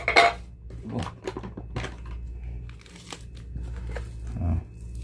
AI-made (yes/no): no